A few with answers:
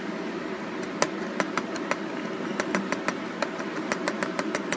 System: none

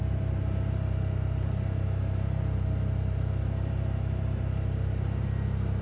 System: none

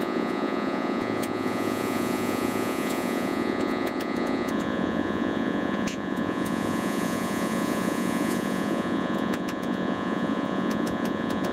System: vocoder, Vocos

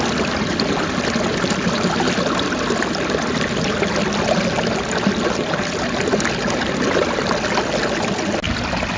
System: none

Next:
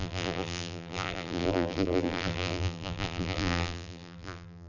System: vocoder, BigVGAN v2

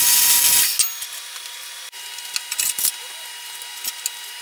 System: none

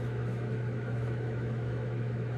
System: autoencoder, DAC-VAE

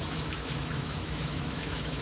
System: autoencoder, DAC-VAE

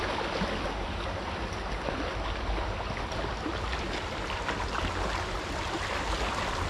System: none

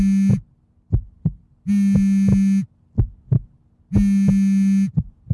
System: none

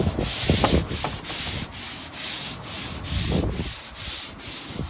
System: none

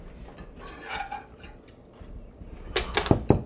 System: none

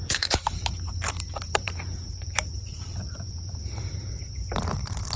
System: vocoder, BigVGAN v2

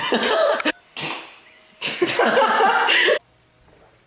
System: none